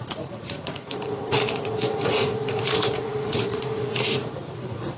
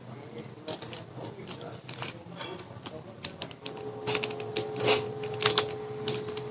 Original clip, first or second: second